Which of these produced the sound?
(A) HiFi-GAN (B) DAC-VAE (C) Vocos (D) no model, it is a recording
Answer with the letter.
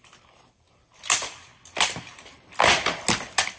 D